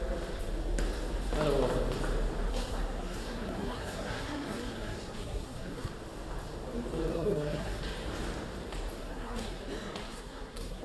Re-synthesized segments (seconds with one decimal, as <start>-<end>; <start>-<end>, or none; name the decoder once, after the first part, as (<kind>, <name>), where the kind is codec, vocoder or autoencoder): 2.5-5.9 (codec, SNAC); 7.1-7.8; 9.0-9.6; 10.0-10.8